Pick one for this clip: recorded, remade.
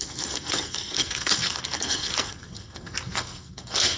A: remade